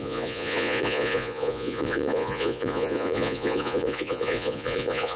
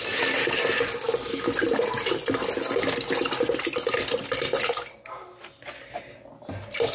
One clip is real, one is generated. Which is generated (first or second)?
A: first